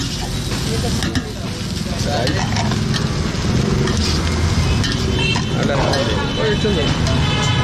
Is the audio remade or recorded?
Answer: recorded